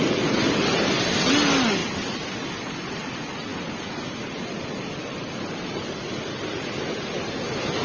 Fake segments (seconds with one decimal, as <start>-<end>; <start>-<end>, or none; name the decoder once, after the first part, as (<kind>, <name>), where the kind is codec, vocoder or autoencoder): none